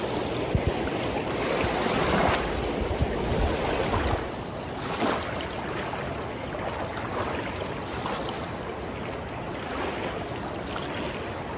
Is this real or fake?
real